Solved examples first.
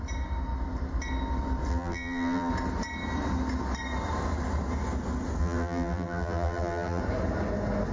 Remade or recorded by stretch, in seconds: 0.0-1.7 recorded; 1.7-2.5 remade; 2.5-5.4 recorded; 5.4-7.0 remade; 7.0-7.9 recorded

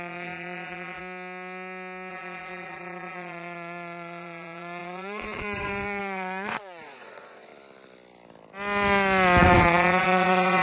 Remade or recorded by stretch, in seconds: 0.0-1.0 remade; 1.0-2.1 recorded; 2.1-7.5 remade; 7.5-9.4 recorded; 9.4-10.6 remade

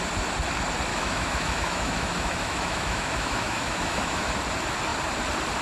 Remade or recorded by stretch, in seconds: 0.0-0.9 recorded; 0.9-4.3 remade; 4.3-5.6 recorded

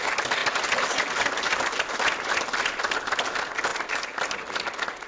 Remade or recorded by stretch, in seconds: 0.0-5.1 recorded

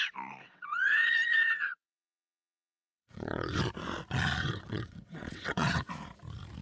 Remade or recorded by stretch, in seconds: 0.0-0.4 recorded; 0.4-3.6 remade; 3.6-4.4 recorded; 4.4-5.9 remade; 5.9-6.6 recorded

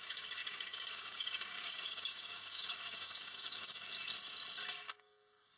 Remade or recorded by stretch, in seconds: 0.0-4.1 remade; 4.1-4.7 recorded; 4.7-5.6 remade